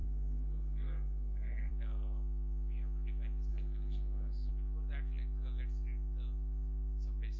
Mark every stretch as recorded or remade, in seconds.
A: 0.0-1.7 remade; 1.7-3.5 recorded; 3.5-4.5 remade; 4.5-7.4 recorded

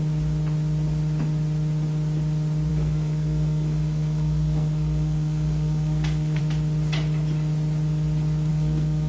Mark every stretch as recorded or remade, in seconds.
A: 0.0-2.7 recorded; 2.7-6.4 remade; 6.4-8.5 recorded; 8.5-9.1 remade

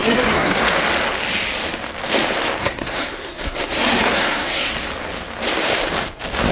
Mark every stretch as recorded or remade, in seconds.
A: 0.0-0.6 remade; 0.6-2.6 recorded; 2.6-4.7 remade; 4.7-6.5 recorded

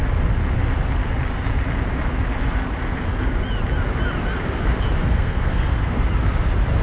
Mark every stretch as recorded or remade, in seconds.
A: 0.0-5.0 recorded; 5.0-6.1 remade; 6.1-6.8 recorded

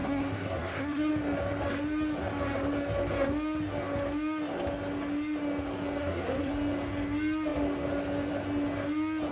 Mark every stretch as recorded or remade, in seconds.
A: 0.0-1.1 remade; 1.1-6.0 recorded; 6.0-6.5 remade; 6.5-9.3 recorded